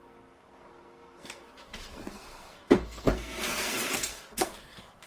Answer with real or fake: fake